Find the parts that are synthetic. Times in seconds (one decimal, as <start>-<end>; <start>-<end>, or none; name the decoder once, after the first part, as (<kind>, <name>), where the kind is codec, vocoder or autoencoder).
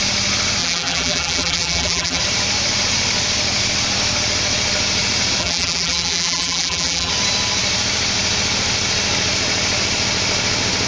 0.6-2.2 (vocoder, BigVGAN v2); 5.4-7.1